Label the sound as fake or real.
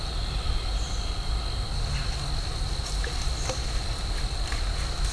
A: real